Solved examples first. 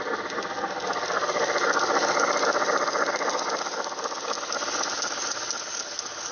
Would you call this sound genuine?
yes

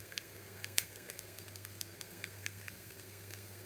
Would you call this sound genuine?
no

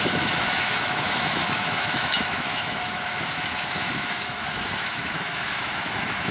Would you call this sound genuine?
no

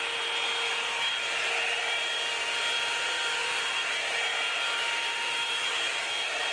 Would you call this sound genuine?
yes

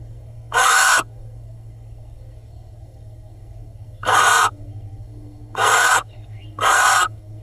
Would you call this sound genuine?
no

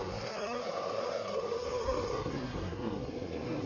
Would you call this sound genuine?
no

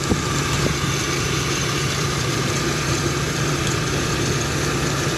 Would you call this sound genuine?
no